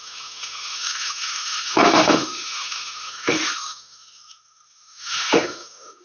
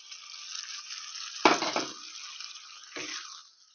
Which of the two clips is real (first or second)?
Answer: second